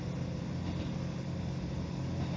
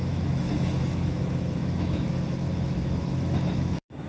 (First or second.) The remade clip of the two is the second